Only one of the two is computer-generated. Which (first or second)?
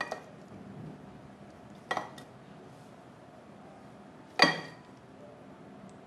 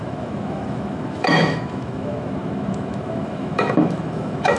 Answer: second